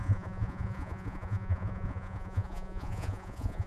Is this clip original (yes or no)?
no